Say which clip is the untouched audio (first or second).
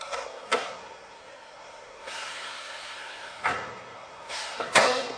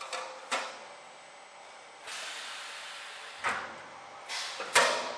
second